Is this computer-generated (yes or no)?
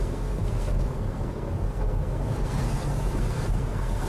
yes